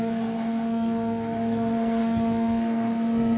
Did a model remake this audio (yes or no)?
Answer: yes